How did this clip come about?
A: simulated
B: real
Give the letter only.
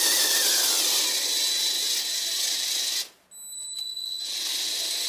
B